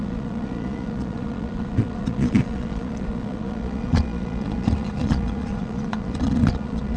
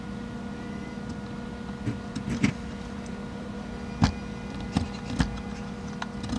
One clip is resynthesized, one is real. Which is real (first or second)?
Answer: second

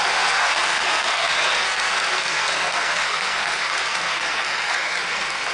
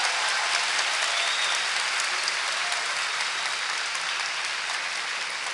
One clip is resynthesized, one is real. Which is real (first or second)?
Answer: second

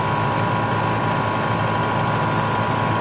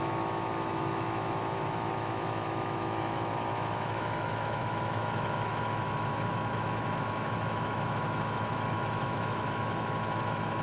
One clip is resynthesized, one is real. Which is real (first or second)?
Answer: first